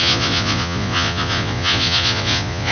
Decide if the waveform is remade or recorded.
remade